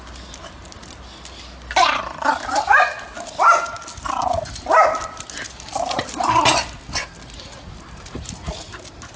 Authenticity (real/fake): real